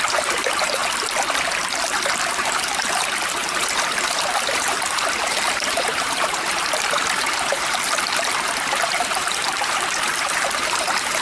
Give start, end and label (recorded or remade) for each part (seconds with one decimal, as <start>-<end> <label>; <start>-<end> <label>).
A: 0.0-0.8 remade; 0.8-2.2 recorded; 2.2-11.2 remade